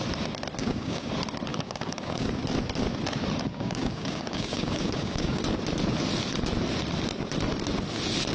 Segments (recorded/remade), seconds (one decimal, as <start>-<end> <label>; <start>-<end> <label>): 0.0-0.6 recorded; 0.6-1.1 remade; 1.1-1.5 recorded; 1.5-2.3 remade; 2.3-3.5 recorded; 3.5-5.4 remade; 5.4-8.3 recorded